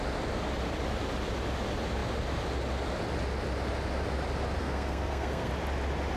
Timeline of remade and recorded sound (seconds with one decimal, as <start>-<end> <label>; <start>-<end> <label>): 0.0-4.6 recorded; 4.6-5.5 remade; 5.5-6.2 recorded